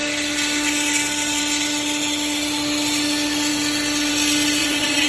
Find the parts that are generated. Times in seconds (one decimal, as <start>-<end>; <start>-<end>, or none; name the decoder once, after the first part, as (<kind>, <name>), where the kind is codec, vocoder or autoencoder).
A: 4.6-5.1 (vocoder, Vocos)